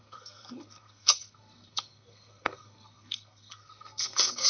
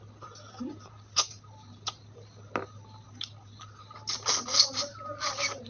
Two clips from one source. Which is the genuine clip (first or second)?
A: second